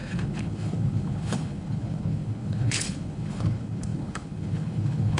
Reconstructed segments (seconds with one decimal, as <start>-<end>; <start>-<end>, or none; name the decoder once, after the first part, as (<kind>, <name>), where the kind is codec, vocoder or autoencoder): 0.0-5.2 (codec, HILCodec)